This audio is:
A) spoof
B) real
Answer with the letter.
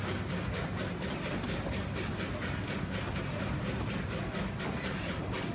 B